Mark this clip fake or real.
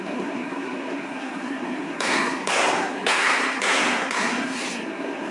fake